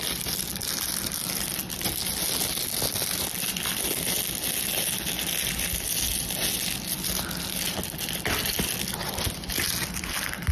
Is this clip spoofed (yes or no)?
no